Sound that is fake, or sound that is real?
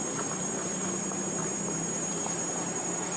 real